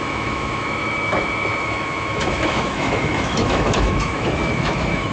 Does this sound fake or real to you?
fake